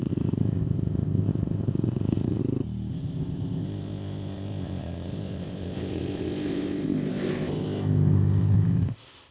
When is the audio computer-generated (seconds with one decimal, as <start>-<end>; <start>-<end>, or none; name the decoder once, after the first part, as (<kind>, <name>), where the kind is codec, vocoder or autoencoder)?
0.0-2.4 (codec, ZipCodec); 2.9-9.3